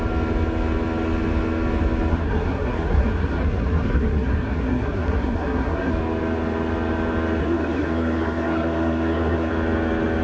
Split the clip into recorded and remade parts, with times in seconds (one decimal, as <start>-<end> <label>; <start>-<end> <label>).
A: 0.0-2.1 recorded; 2.1-5.9 remade; 5.9-7.4 recorded; 7.4-9.5 remade; 9.5-10.2 recorded